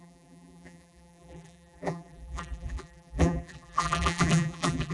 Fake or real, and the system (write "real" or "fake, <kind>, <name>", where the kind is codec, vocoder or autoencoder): fake, vocoder, BigVGAN v2